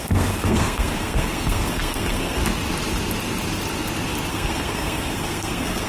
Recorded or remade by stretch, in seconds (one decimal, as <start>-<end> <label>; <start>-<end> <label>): 0.0-2.4 remade; 2.4-4.3 recorded; 4.3-5.9 remade